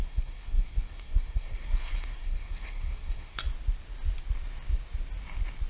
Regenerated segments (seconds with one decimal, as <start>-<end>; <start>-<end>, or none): 0.0-3.4